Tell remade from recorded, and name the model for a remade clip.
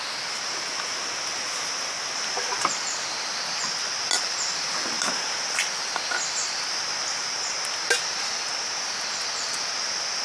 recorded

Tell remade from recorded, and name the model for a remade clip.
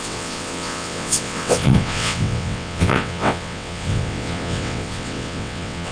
remade, vocoder, WaveNeXt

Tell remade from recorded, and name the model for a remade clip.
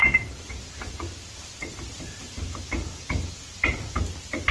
recorded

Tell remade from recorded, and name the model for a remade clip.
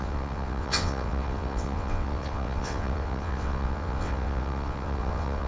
remade, vocoder, WaveNeXt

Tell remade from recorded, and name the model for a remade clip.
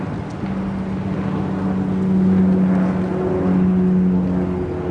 recorded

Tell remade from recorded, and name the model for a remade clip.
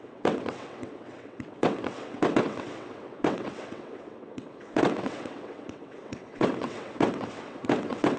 remade, vocoder, WaveNeXt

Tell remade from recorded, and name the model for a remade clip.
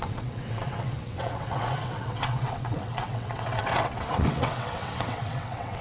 remade, vocoder, WaveNeXt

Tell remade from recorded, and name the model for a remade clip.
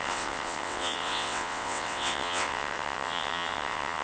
remade, vocoder, WaveNeXt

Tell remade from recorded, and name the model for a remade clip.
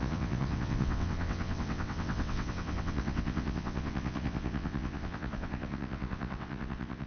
remade, vocoder, WaveNeXt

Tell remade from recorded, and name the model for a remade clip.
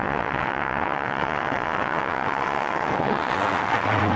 remade, vocoder, WaveNeXt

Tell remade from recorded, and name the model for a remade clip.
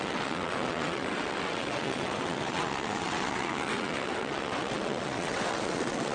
remade, vocoder, WaveNeXt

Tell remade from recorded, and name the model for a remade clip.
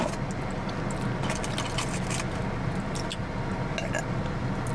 recorded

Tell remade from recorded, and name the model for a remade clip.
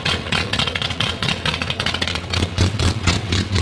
remade, vocoder, WaveNeXt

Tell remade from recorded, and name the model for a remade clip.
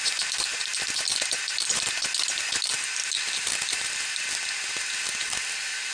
recorded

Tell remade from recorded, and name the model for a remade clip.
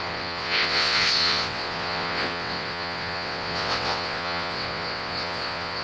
remade, vocoder, WaveNeXt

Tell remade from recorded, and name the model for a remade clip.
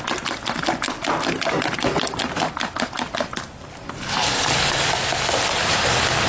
recorded